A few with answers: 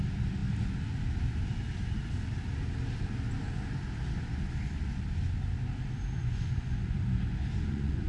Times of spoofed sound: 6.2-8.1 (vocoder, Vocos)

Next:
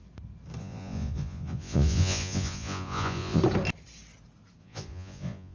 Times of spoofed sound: 0.6-3.4 (vocoder, Vocos); 4.6-5.5